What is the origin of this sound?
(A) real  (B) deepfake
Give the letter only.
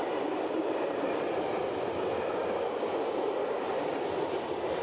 A